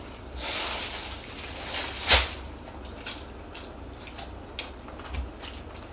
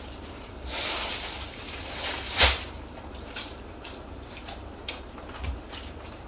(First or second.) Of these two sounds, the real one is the first